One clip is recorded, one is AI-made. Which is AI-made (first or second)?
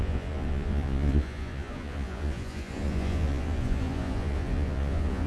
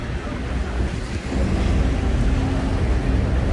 first